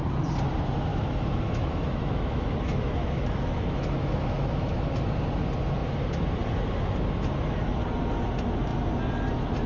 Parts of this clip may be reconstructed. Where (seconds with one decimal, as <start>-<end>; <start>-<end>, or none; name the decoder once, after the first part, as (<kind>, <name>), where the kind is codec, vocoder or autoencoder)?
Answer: 0.9-4.9 (autoencoder, DAC-VAE)